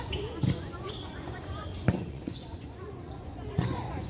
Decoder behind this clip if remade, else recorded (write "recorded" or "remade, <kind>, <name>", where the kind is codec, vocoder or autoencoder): remade, vocoder, Vocos